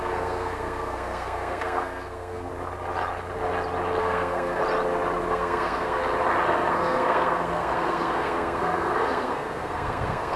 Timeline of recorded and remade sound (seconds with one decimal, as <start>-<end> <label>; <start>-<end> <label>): 0.0-2.5 remade; 2.5-4.0 recorded; 4.0-4.6 remade; 4.6-5.3 recorded; 5.3-6.0 remade; 6.0-6.7 recorded; 6.7-10.4 remade

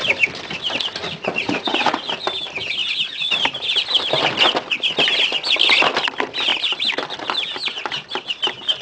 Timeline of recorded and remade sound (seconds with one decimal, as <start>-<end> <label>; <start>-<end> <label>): 0.0-1.0 recorded; 1.0-2.1 remade; 2.1-8.8 recorded

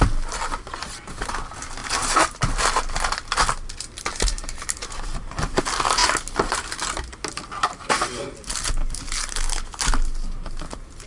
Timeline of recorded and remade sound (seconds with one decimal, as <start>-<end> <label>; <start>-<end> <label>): 0.0-1.8 recorded; 1.8-2.6 remade; 2.6-4.1 recorded; 4.1-5.6 remade; 5.6-11.1 recorded

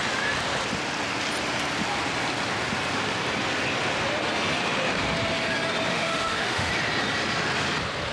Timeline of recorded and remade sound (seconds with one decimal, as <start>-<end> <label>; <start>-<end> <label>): 0.0-5.9 recorded; 5.9-6.7 remade; 6.7-8.1 recorded

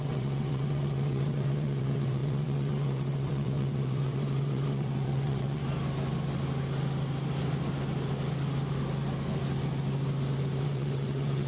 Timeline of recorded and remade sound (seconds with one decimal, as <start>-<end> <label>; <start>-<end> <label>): 0.0-5.6 remade; 5.6-10.6 recorded; 10.6-11.5 remade

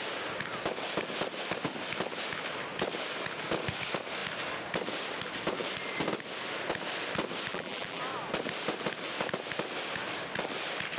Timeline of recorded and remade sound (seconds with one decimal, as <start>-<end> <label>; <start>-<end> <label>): 0.0-7.5 recorded; 7.5-8.0 remade; 8.0-11.0 recorded

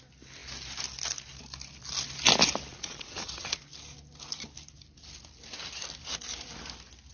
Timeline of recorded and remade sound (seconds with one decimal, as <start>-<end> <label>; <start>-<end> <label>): 0.0-2.7 recorded; 2.7-3.6 remade; 3.6-7.1 recorded

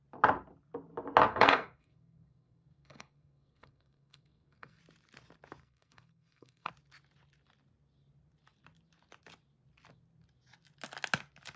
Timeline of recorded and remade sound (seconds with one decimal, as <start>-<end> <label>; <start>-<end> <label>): 0.0-1.3 recorded; 1.3-4.8 remade; 4.8-5.6 recorded; 5.6-6.7 remade; 6.7-11.6 recorded